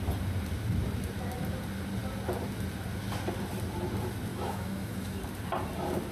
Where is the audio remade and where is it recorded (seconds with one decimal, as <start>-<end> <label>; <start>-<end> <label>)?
0.0-4.3 recorded; 4.3-5.2 remade; 5.2-6.1 recorded